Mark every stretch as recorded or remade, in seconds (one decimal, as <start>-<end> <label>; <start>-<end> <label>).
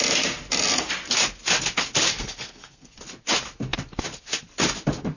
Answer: 0.0-2.1 recorded; 2.1-3.0 remade; 3.0-5.2 recorded